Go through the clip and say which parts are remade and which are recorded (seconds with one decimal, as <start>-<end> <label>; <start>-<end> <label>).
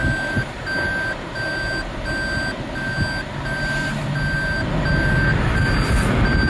0.0-6.5 recorded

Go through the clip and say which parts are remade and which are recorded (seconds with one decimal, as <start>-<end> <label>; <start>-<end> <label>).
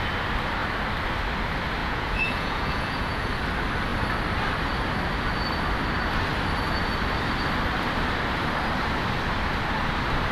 0.0-1.8 recorded; 1.8-3.3 remade; 3.3-10.3 recorded